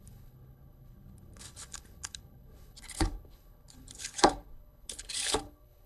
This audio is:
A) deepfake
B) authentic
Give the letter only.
A